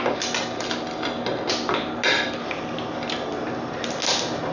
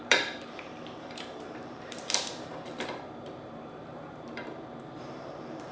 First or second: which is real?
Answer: first